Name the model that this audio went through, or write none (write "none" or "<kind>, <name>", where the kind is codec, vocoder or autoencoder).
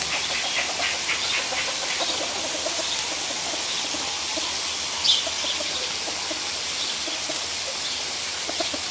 none